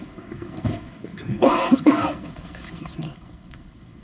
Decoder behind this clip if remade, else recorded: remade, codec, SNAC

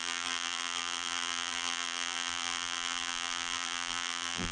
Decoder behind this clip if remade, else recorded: remade, vocoder, BigVGAN v2